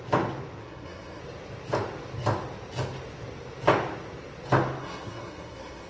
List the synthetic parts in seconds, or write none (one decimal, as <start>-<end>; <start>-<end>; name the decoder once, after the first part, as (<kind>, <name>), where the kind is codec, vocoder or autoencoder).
0.6-1.2 (codec, SNAC); 4.8-5.9